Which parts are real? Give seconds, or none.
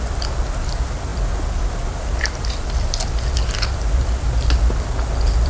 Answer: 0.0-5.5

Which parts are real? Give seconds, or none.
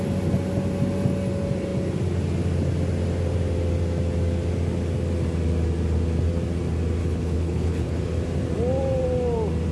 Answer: 0.0-7.0; 8.0-9.7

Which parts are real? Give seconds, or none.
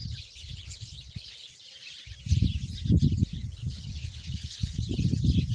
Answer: 1.5-3.3; 4.8-5.5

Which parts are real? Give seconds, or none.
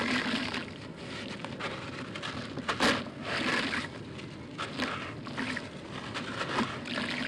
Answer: 0.0-7.3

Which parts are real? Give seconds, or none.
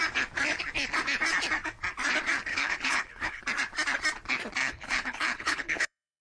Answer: 0.0-2.5; 3.4-4.6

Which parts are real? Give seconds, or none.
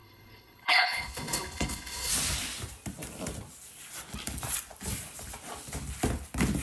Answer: 2.1-6.6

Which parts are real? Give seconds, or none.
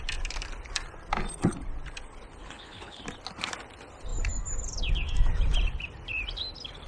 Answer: 0.0-2.4; 3.0-6.9